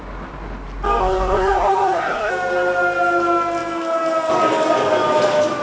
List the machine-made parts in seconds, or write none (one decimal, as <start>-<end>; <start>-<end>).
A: 1.0-2.3